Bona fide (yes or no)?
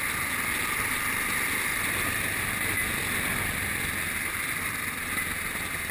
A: yes